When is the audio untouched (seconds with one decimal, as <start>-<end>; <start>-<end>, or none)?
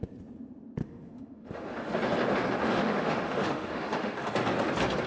0.0-0.8; 1.9-2.6; 4.3-5.1